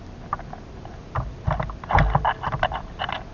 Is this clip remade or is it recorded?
recorded